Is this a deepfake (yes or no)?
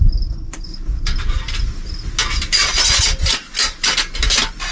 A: no